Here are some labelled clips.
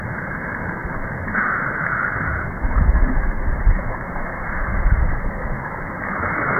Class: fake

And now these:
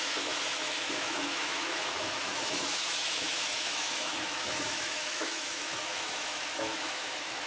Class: fake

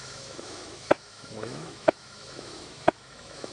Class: fake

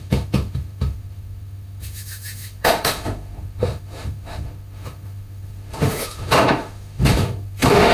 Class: fake